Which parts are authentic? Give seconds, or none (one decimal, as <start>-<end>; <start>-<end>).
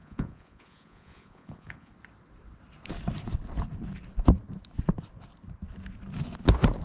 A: 1.9-6.8